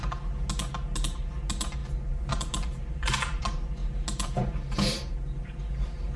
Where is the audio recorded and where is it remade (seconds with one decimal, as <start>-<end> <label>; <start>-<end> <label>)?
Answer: 0.0-6.2 recorded